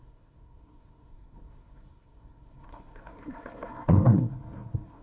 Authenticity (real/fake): fake